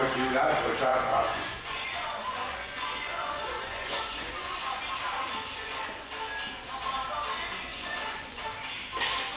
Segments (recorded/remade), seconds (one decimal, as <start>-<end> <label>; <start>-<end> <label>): 0.0-0.9 recorded; 0.9-4.8 remade; 4.8-5.5 recorded; 5.5-6.1 remade; 6.1-7.7 recorded; 7.7-8.4 remade; 8.4-9.4 recorded